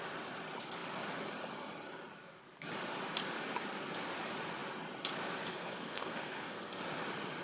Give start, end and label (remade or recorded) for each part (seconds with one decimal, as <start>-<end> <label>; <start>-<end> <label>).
0.0-5.5 recorded; 5.5-6.8 remade; 6.8-7.4 recorded